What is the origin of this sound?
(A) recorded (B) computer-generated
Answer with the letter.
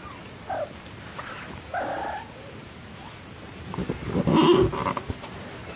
A